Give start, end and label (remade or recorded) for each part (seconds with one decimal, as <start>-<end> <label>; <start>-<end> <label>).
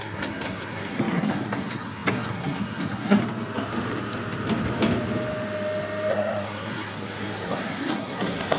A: 0.0-3.2 remade; 3.2-6.1 recorded; 6.1-8.6 remade